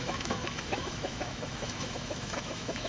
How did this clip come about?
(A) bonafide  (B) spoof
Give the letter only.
B